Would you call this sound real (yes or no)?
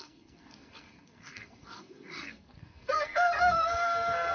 no